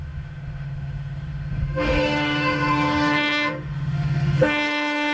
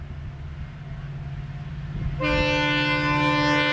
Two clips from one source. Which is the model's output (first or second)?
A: first